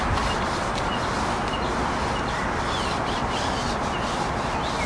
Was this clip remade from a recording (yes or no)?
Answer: no